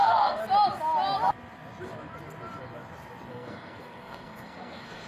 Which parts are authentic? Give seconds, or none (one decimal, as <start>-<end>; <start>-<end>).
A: 0.4-3.3